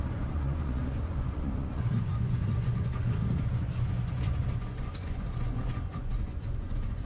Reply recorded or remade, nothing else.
remade